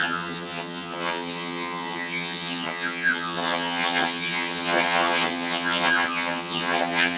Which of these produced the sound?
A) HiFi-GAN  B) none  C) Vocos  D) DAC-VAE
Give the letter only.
A